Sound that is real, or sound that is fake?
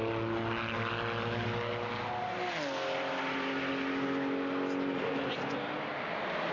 real